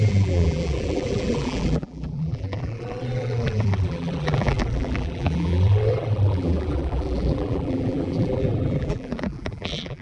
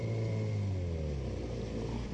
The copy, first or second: first